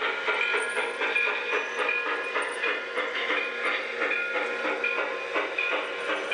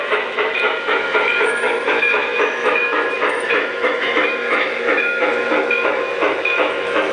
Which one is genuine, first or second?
first